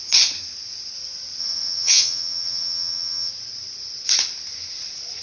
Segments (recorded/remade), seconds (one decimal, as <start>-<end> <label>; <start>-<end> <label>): 0.0-1.4 recorded; 1.4-3.3 remade; 3.3-5.2 recorded

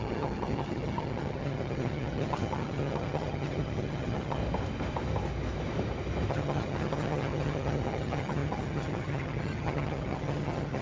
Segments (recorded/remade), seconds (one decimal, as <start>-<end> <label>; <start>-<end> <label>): 0.0-4.4 remade; 4.4-6.3 recorded; 6.3-10.8 remade

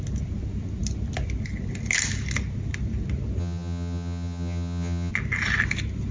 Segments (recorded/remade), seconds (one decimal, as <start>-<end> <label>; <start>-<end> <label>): 0.0-3.4 recorded; 3.4-5.1 remade; 5.1-6.1 recorded

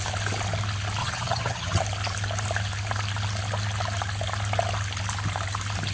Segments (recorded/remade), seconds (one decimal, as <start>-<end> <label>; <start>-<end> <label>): 0.0-1.0 recorded; 1.0-1.8 remade; 1.8-5.9 recorded

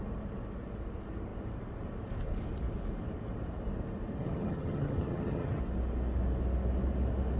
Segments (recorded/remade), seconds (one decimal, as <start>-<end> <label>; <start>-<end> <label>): 0.0-4.2 recorded; 4.2-5.6 remade; 5.6-7.4 recorded

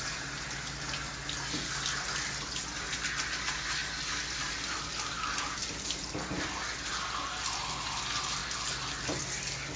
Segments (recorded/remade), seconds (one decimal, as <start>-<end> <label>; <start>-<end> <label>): 0.0-9.8 recorded

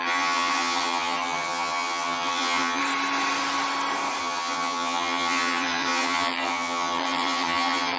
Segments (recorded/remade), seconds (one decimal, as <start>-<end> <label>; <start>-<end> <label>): 0.0-2.8 remade; 2.8-4.2 recorded; 4.2-8.0 remade